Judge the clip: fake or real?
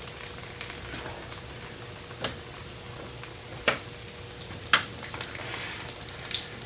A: real